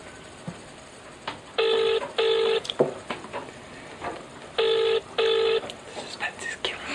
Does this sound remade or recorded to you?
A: recorded